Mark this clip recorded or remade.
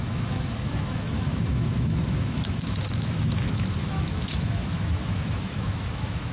remade